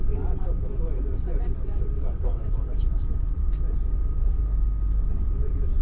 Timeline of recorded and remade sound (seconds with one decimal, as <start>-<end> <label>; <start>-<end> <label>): 0.0-4.4 remade; 4.4-5.0 recorded; 5.0-5.8 remade